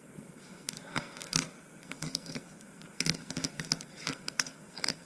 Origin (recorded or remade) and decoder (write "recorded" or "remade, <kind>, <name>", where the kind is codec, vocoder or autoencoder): remade, codec, SNAC